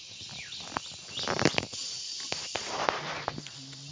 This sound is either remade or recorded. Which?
recorded